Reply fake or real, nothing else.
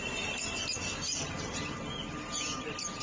real